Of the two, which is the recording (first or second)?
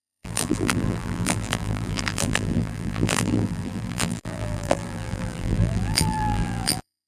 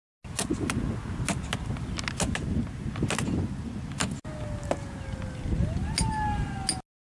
second